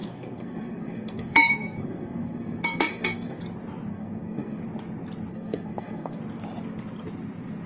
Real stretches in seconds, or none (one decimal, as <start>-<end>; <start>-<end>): 3.4-3.9; 4.6-5.3; 6.2-7.7